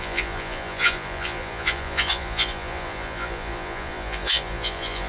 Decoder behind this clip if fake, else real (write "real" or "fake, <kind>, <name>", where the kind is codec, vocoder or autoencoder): fake, vocoder, Vocos